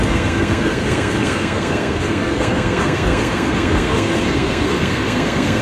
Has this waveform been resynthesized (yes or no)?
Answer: yes